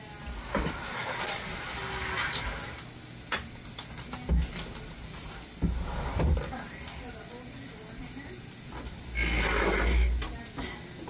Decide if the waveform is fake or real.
real